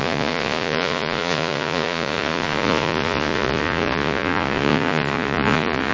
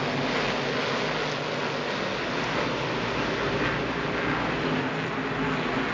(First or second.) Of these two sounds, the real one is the second